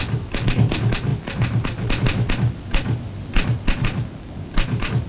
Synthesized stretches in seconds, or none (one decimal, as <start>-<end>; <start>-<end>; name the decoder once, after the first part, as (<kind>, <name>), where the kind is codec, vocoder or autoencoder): none